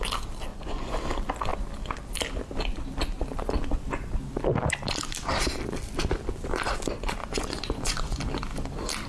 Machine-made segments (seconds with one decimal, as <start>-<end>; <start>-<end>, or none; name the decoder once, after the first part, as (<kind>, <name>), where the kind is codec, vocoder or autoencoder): 0.5-1.0 (vocoder, Vocos); 7.2-8.2